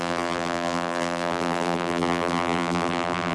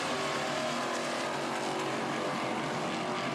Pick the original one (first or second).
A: second